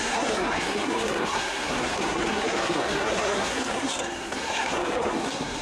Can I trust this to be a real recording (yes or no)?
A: no